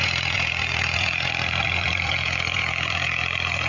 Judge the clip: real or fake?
fake